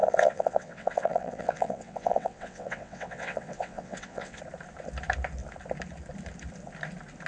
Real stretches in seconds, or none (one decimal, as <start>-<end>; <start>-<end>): 4.4-7.3